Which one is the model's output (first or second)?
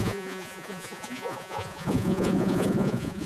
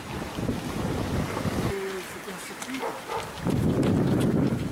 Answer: first